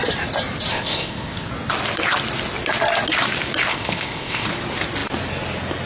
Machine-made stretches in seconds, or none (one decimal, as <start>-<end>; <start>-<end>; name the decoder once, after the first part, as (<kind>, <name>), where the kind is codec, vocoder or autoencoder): 0.7-1.5 (codec, ZipCodec); 3.7-4.5